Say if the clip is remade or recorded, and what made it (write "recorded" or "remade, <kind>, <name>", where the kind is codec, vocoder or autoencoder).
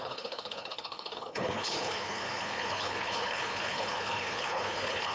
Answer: remade, codec, HILCodec